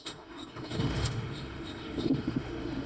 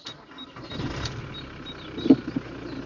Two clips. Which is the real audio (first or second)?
second